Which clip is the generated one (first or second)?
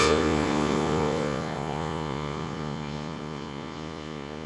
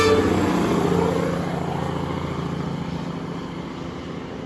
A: first